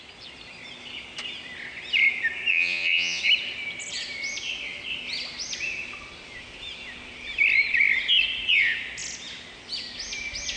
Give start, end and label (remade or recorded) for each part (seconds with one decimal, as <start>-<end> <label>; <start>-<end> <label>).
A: 0.0-2.5 recorded; 2.5-3.2 remade; 3.2-10.6 recorded